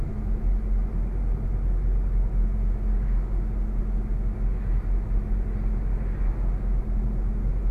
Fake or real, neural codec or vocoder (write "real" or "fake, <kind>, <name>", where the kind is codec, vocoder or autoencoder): real